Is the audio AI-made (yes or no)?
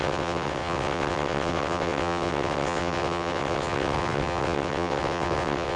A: yes